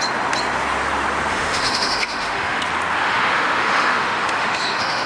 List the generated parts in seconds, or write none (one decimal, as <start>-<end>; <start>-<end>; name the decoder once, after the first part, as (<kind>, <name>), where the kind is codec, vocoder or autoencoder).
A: 1.3-2.6 (autoencoder, DAC-VAE); 3.0-5.1